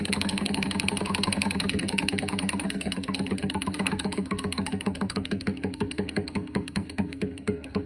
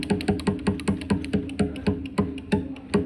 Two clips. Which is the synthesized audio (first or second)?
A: first